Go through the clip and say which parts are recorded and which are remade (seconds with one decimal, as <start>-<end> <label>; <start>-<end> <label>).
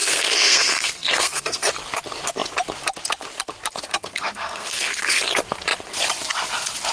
0.0-1.7 remade; 1.7-3.9 recorded; 3.9-5.2 remade; 5.2-6.9 recorded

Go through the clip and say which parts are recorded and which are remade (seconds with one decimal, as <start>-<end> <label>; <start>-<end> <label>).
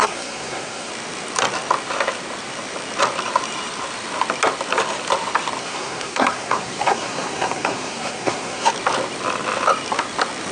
0.0-0.9 remade; 0.9-5.6 recorded; 5.6-8.7 remade; 8.7-10.5 recorded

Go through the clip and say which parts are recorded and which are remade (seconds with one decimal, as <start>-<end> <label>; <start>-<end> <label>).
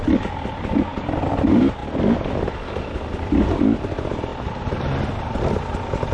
0.0-6.1 recorded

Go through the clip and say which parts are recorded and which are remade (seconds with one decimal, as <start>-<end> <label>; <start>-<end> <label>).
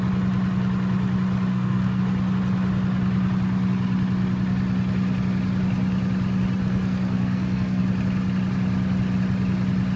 0.0-1.5 recorded; 1.5-2.0 remade; 2.0-6.6 recorded; 6.6-7.8 remade; 7.8-10.0 recorded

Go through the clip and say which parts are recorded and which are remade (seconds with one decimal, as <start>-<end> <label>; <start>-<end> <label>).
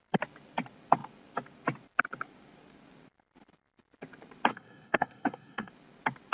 0.0-4.5 recorded; 4.5-5.7 remade; 5.7-6.3 recorded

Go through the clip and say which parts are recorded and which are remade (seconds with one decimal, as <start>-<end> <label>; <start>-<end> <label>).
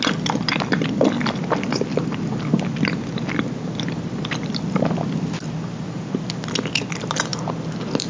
0.0-8.1 recorded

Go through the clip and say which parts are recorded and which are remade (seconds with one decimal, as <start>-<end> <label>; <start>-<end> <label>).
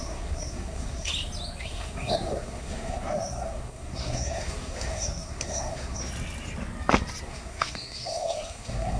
0.0-1.1 remade; 1.1-1.6 recorded; 1.6-6.0 remade; 6.0-7.2 recorded; 7.2-9.0 remade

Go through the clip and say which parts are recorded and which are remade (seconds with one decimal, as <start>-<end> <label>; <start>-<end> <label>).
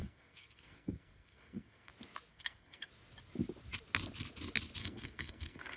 0.0-1.9 remade; 1.9-2.3 recorded; 2.3-2.9 remade; 2.9-4.8 recorded; 4.8-5.8 remade